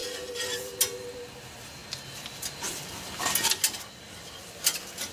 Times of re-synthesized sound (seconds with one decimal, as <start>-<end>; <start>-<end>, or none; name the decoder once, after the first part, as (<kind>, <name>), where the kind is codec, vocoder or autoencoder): 1.4-1.8 (vocoder, BigVGAN v2)